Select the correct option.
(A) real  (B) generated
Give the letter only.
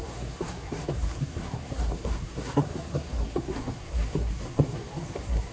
B